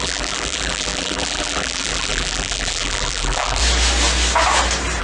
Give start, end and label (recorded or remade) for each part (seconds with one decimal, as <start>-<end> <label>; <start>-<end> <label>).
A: 0.0-3.6 remade; 3.6-5.0 recorded

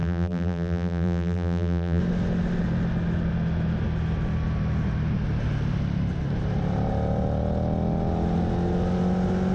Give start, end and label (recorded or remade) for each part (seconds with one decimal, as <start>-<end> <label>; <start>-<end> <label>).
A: 0.0-2.0 remade; 2.0-9.5 recorded

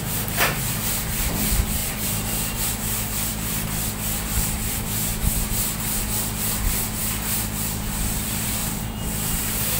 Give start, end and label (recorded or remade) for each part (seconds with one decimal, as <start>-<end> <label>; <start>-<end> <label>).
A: 0.0-3.3 remade; 3.3-3.9 recorded; 3.9-5.1 remade; 5.1-6.4 recorded; 6.4-9.8 remade

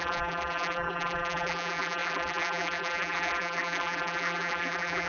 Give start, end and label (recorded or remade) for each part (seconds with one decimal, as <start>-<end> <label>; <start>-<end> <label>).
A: 0.0-5.1 remade

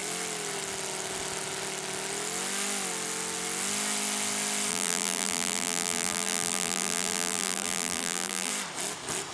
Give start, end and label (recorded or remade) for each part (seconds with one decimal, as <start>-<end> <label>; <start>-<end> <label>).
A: 0.0-4.7 recorded; 4.7-8.5 remade; 8.5-9.3 recorded

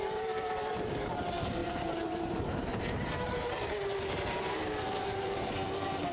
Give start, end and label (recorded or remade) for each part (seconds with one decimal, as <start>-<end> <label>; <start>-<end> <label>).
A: 0.0-6.1 remade